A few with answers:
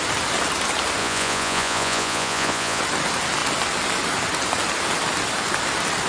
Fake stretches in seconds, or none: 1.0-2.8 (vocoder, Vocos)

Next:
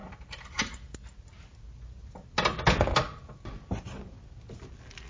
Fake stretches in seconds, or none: none

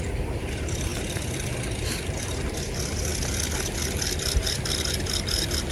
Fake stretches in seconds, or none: 0.0-3.1 (vocoder, BigVGAN v2); 3.8-5.7

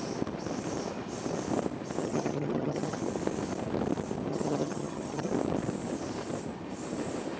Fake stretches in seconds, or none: 2.0-3.0 (vocoder, HiFi-GAN); 4.3-5.3

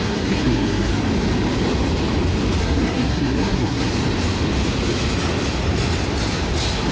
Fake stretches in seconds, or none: 0.0-0.9 (codec, SNAC); 2.6-3.9

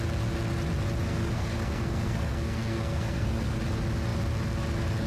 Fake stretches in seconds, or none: 1.1-3.6 (codec, SNAC)

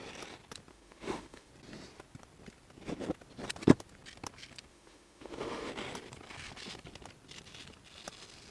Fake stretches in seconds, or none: 0.7-1.5 (autoencoder, DAC-VAE); 4.7-5.7

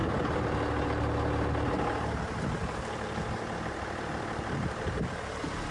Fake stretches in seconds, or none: 0.0-0.8 (vocoder, BigVGAN v2); 2.6-5.0